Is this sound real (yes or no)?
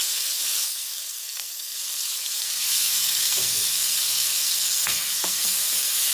no